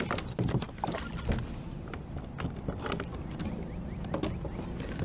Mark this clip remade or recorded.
recorded